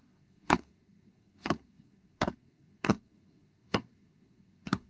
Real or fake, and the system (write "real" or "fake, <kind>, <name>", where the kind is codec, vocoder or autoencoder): fake, codec, SNAC